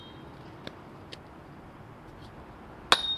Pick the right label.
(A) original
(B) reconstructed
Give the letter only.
A